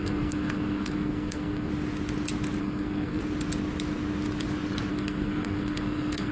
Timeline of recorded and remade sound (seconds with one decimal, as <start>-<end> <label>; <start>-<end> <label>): 0.0-1.7 remade; 1.7-2.6 recorded; 2.6-3.2 remade; 3.2-4.9 recorded; 4.9-6.3 remade